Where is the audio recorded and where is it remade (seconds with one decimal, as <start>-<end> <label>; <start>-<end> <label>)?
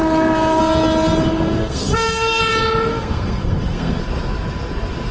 0.0-0.6 remade; 0.6-1.6 recorded; 1.6-2.4 remade; 2.4-2.9 recorded; 2.9-4.0 remade; 4.0-5.1 recorded